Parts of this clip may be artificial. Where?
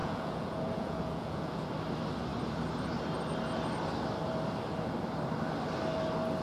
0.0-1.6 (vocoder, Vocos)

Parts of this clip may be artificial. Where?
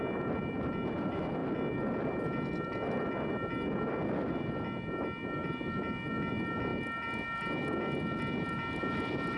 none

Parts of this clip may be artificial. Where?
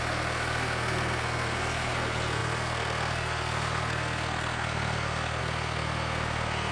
0.0-6.7 (codec, SNAC)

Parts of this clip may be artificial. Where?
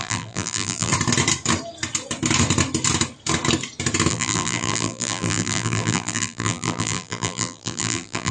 0.0-0.9 (vocoder, BigVGAN v2); 4.1-8.3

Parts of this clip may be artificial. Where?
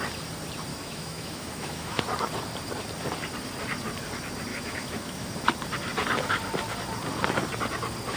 0.7-2.0 (autoencoder, DAC-VAE); 4.5-5.3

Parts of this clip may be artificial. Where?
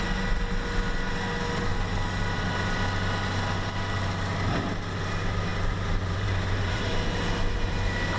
5.5-6.9 (vocoder, BigVGAN v2)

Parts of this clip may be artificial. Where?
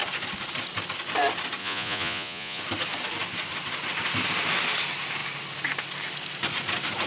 1.6-2.6 (vocoder, Vocos)